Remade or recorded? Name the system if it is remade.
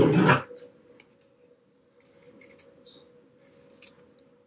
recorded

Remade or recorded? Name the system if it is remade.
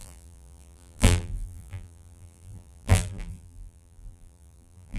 remade, vocoder, BigVGAN v2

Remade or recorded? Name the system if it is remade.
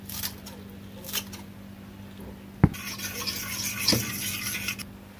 recorded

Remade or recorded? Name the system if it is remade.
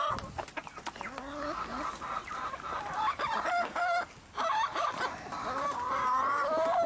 recorded